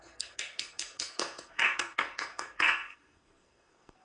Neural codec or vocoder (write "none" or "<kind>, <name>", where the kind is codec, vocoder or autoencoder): codec, SNAC